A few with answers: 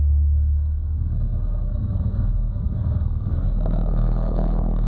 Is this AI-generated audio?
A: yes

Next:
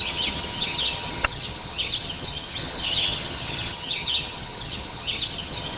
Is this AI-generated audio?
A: yes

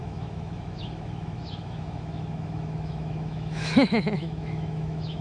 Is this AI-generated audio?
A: yes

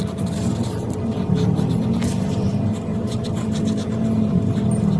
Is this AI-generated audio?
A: no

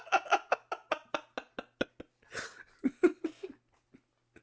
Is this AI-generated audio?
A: no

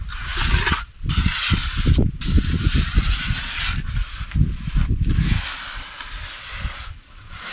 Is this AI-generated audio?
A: no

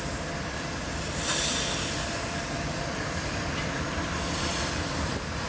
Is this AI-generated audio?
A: no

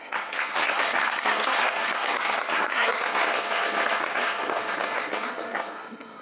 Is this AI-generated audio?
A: yes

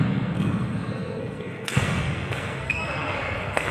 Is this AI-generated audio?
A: yes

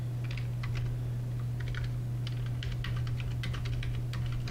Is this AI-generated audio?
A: no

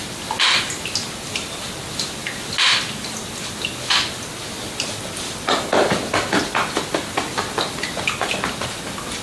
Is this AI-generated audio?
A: no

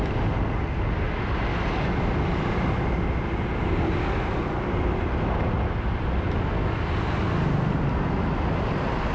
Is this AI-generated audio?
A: no